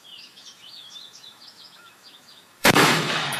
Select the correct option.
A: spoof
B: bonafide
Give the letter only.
A